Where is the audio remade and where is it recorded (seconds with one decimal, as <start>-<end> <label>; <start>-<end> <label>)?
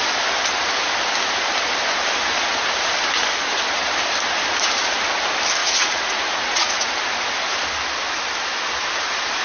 0.0-5.6 recorded; 5.6-6.9 remade; 6.9-9.4 recorded